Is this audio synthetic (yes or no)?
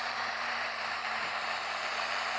yes